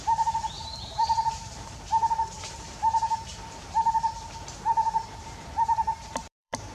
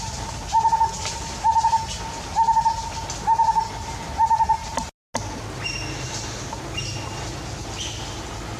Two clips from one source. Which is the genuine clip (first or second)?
second